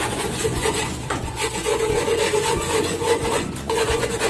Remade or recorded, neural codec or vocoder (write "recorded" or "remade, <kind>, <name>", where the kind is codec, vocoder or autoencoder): remade, vocoder, Vocos